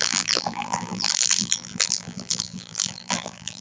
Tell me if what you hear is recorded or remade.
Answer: remade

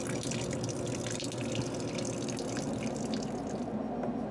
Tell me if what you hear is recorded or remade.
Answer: recorded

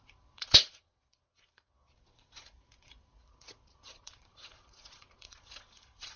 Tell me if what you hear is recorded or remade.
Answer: remade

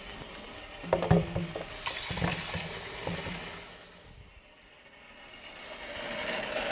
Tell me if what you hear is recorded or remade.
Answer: recorded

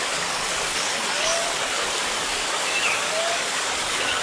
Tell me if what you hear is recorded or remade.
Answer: remade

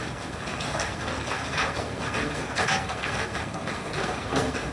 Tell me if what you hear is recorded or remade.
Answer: remade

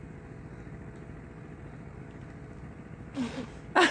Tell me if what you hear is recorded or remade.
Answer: recorded